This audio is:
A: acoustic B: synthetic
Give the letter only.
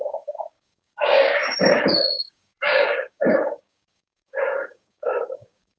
B